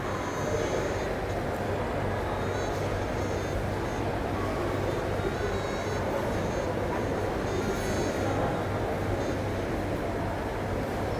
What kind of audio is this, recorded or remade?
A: recorded